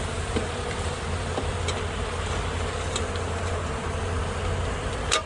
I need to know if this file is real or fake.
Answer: real